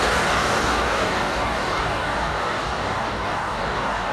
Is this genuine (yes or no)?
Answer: no